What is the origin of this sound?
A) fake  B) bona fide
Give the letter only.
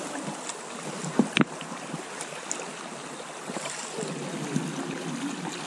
B